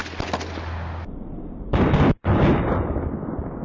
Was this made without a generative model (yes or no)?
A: yes